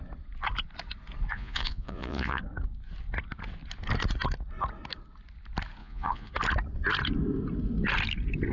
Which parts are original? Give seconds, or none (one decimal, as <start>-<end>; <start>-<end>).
0.0-1.3; 2.4-5.8; 6.3-8.5